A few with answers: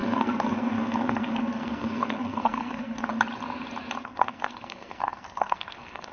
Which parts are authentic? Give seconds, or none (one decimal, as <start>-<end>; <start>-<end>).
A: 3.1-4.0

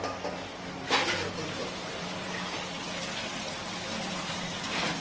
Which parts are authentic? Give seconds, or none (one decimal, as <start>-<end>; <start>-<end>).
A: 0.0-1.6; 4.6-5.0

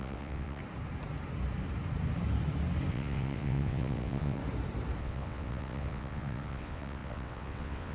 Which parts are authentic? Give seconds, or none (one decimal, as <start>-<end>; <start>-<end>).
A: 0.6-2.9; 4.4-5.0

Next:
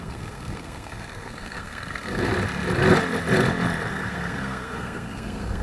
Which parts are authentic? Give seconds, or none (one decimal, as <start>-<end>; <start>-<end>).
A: 2.3-3.9

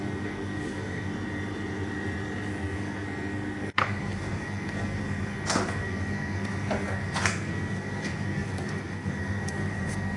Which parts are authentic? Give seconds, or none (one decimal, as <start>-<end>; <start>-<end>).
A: 1.1-2.5